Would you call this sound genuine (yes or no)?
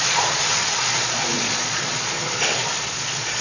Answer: no